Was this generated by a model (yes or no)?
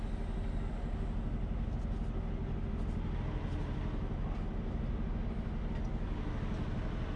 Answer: no